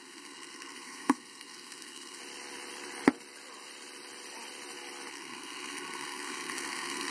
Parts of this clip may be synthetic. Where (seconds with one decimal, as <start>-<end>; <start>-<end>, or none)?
0.0-2.2; 5.1-7.1